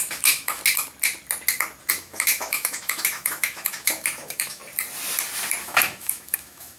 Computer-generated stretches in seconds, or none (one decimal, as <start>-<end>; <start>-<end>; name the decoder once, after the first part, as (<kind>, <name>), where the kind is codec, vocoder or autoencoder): 0.0-0.6 (autoencoder, DAC-VAE); 1.9-4.6; 5.6-6.8